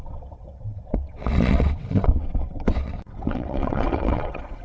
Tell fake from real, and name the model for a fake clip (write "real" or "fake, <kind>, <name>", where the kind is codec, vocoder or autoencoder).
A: fake, vocoder, WaveNeXt